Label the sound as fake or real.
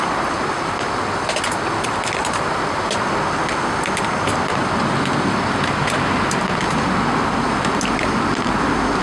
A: real